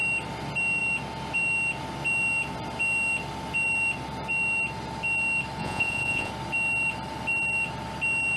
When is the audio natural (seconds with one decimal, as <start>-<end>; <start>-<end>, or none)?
0.0-5.6; 6.3-8.4